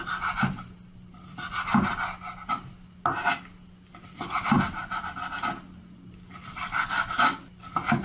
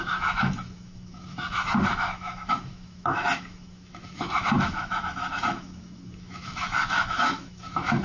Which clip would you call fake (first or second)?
second